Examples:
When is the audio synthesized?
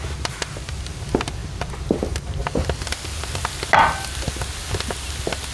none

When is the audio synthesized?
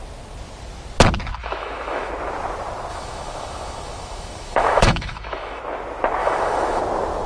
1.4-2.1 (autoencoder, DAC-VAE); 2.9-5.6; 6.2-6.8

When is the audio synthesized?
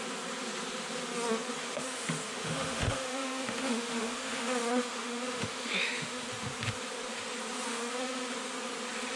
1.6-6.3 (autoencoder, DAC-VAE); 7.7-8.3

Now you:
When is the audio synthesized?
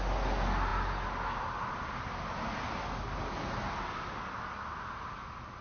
none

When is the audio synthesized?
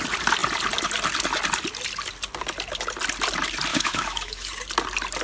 3.7-4.5 (autoencoder, DAC-VAE)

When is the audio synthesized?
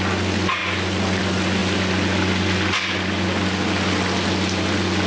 none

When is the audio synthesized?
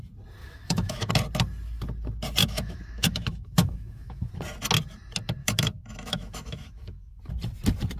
0.4-1.1 (autoencoder, DAC-VAE); 2.4-4.3; 5.4-7.2